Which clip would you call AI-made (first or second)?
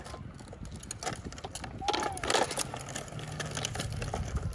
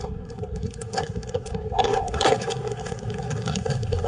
second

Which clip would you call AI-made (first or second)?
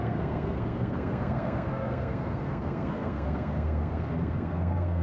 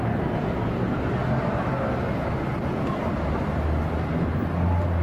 first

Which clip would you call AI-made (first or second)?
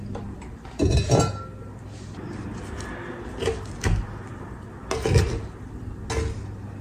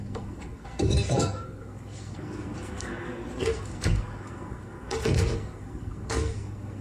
second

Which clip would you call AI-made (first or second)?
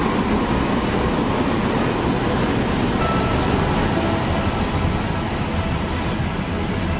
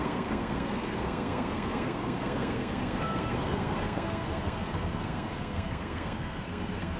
second